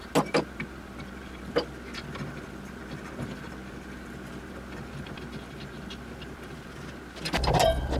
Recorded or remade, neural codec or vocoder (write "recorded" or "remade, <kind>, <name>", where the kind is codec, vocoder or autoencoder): recorded